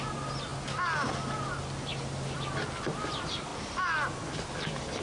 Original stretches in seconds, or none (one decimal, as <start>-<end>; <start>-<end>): 0.0-5.0